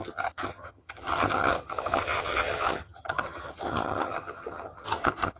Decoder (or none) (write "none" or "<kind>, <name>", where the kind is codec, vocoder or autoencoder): vocoder, HiFi-GAN